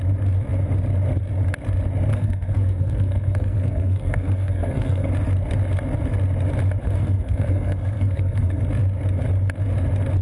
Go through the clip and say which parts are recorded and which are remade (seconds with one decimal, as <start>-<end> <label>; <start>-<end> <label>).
0.0-2.1 recorded; 2.1-5.1 remade; 5.1-6.8 recorded; 6.8-8.6 remade; 8.6-10.2 recorded

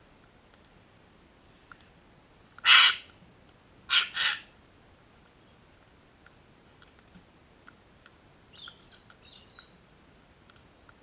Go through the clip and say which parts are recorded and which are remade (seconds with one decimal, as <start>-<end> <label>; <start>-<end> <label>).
0.0-11.0 recorded